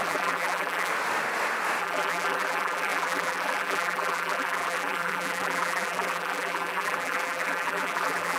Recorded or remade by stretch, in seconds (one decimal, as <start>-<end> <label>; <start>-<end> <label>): 0.0-0.9 remade; 0.9-1.8 recorded; 1.8-8.4 remade